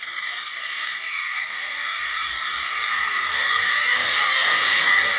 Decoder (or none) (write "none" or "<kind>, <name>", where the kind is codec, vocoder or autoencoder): codec, DAC